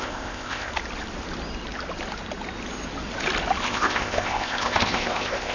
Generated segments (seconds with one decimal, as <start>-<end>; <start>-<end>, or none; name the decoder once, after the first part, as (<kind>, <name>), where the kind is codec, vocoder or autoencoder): 0.0-0.7 (codec, ZipCodec); 3.6-5.5